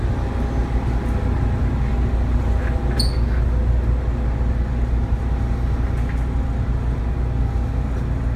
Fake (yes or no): no